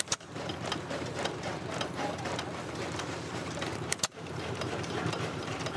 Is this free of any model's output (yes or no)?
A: no